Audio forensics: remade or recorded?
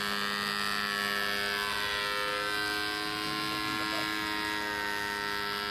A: recorded